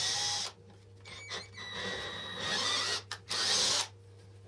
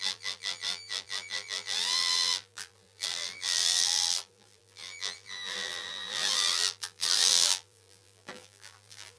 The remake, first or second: second